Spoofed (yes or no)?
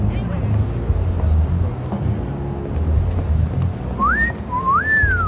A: no